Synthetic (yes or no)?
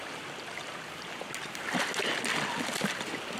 no